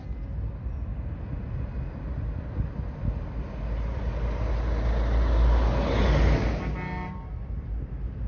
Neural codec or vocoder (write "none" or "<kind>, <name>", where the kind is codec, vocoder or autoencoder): none